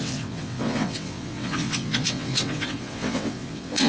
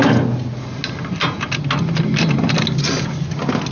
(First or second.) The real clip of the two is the second